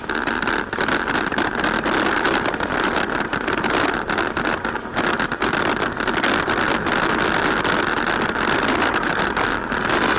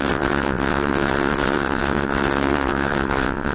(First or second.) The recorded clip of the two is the first